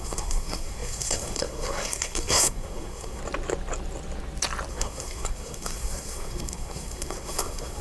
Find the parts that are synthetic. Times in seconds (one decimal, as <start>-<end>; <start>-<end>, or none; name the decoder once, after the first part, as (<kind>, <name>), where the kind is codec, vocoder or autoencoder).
0.0-3.2 (codec, SNAC); 4.7-7.8